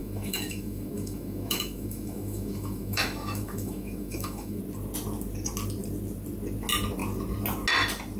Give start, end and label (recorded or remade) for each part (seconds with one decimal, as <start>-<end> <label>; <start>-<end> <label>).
0.0-4.6 remade; 4.6-8.2 recorded